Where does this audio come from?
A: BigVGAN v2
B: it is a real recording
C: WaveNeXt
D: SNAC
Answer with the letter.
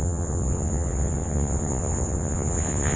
C